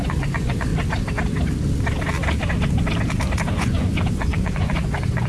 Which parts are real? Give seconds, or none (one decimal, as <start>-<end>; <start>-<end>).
0.7-3.6